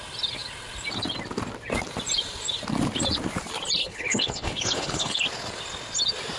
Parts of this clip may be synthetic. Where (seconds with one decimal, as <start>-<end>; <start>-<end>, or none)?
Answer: 3.8-5.2